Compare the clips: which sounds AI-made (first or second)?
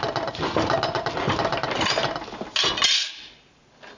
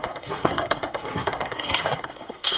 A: second